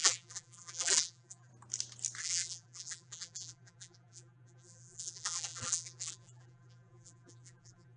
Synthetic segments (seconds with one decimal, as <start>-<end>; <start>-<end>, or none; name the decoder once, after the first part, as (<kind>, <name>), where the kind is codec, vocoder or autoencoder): 0.0-1.5 (vocoder, BigVGAN v2); 2.2-8.0